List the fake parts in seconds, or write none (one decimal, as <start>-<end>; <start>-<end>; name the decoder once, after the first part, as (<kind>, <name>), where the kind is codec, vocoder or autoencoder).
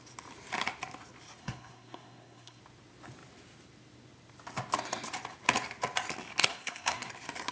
1.4-2.6 (codec, SNAC); 6.5-7.1